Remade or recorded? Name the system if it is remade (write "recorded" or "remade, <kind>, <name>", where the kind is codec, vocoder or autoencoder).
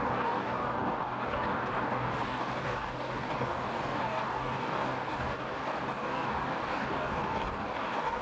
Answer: remade, codec, DAC